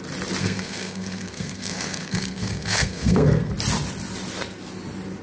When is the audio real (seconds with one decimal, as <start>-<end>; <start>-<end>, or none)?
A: 0.0-0.4; 3.5-5.2